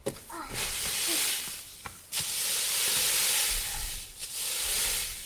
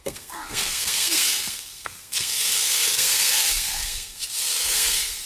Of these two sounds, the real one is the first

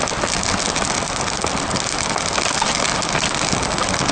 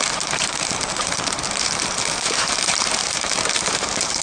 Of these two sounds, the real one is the first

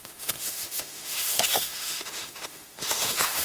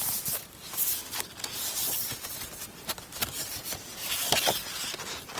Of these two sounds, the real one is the second